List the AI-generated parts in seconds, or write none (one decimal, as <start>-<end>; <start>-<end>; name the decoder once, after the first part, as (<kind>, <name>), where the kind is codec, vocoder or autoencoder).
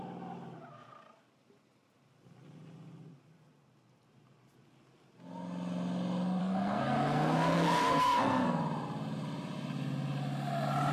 6.4-8.6 (codec, SNAC)